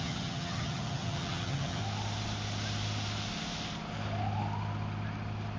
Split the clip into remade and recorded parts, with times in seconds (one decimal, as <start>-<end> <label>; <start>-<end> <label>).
0.0-1.8 remade; 1.8-5.6 recorded